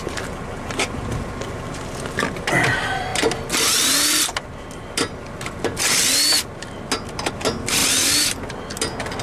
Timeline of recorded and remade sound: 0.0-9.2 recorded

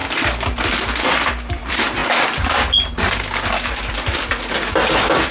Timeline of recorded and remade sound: 0.0-2.0 remade; 2.0-3.9 recorded; 3.9-5.3 remade

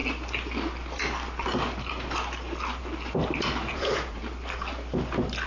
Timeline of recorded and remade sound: 0.0-3.7 recorded; 3.7-4.2 remade; 4.2-5.5 recorded

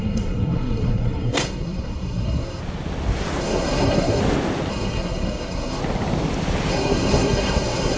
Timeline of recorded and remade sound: 0.0-2.6 remade; 2.6-3.4 recorded; 3.4-4.2 remade; 4.2-4.7 recorded; 4.7-5.8 remade; 5.8-6.7 recorded; 6.7-8.0 remade

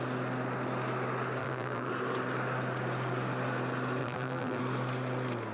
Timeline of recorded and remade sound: 0.0-1.4 recorded; 1.4-1.9 remade; 1.9-4.0 recorded; 4.0-4.6 remade; 4.6-5.5 recorded